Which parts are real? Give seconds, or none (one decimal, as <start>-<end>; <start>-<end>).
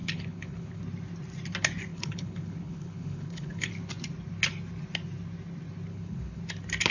0.8-1.9; 3.7-5.9; 6.4-6.9